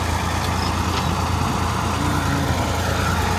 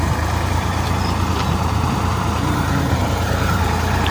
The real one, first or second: first